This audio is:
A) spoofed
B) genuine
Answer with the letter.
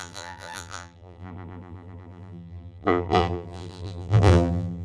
A